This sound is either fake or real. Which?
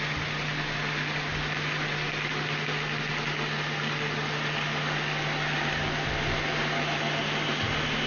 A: real